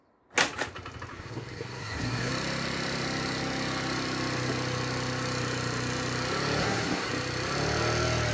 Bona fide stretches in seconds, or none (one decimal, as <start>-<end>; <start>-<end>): 0.0-1.1; 2.3-6.6; 7.1-8.3